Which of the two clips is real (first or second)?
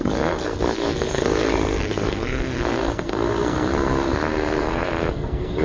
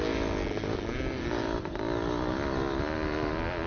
second